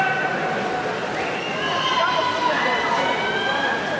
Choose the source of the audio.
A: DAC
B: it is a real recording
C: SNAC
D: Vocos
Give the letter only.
B